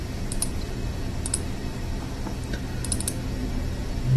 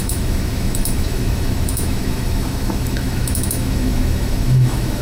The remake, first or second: second